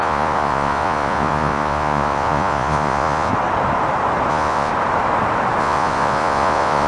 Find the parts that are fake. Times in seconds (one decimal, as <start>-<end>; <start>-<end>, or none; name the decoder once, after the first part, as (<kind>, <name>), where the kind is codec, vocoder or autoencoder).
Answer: 0.0-3.3 (vocoder, Vocos); 4.3-4.7; 5.6-6.9